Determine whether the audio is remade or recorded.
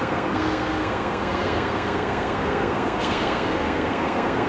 remade